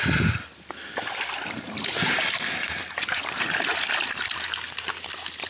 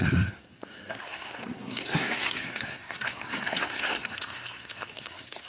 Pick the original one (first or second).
first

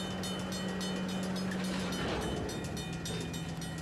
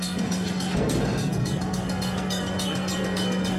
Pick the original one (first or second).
first